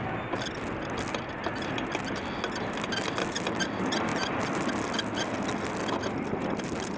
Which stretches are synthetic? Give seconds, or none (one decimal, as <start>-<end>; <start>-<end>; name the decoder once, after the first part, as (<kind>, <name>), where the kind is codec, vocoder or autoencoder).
none

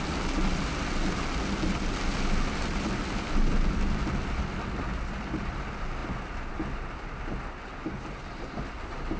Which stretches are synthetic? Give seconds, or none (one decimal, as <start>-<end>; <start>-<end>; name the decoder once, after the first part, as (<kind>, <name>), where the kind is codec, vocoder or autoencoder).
none

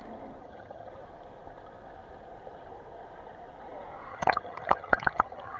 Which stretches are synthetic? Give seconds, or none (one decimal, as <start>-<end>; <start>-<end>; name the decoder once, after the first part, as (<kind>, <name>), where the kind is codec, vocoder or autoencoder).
0.4-0.9 (vocoder, HiFi-GAN); 4.1-5.6

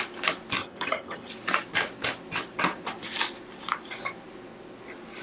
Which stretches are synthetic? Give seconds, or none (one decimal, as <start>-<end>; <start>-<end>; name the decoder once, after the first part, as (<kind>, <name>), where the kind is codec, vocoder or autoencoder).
0.6-1.3 (vocoder, HiFi-GAN)

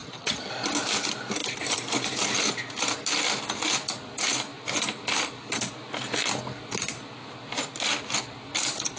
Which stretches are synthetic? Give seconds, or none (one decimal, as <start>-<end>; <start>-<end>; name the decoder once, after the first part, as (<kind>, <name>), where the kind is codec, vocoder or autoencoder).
0.0-0.5 (vocoder, HiFi-GAN)

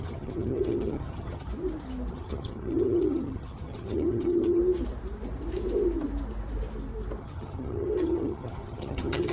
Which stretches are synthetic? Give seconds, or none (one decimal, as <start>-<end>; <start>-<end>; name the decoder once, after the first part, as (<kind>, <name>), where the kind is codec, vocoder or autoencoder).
0.0-1.5 (vocoder, HiFi-GAN); 2.1-4.6; 7.2-9.3

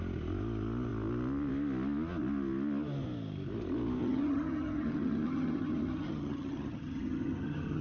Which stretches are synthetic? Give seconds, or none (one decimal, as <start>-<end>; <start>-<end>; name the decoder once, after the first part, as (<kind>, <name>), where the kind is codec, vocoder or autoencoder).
4.0-7.8 (vocoder, HiFi-GAN)